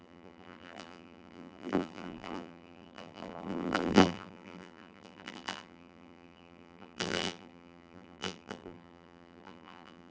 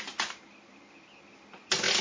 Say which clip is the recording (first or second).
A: second